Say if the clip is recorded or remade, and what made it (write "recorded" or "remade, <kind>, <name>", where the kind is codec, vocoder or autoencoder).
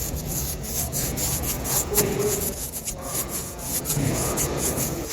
remade, vocoder, Vocos